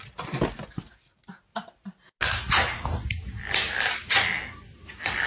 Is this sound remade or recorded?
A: recorded